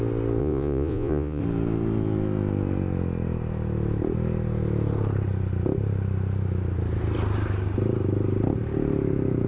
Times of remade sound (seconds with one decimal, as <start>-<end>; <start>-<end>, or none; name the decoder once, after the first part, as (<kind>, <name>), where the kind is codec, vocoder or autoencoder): 0.4-1.4 (vocoder, Vocos)